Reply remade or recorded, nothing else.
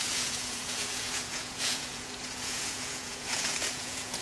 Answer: remade